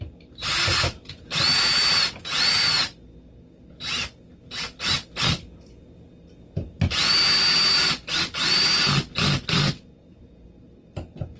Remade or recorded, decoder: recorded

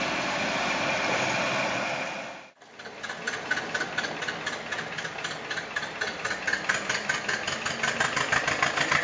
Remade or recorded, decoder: recorded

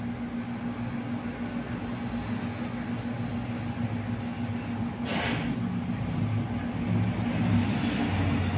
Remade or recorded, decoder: recorded